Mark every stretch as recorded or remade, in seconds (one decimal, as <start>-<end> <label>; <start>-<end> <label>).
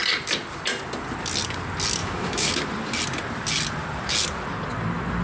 0.0-2.0 recorded; 2.0-2.5 remade; 2.5-5.2 recorded